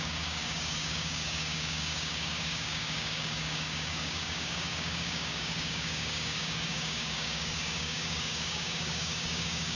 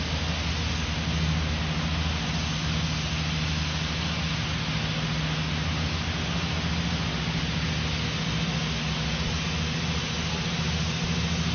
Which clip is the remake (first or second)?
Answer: first